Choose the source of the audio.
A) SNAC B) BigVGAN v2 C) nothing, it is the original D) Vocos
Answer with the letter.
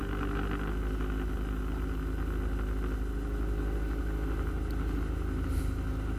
C